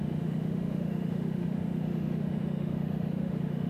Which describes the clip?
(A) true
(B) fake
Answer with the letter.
B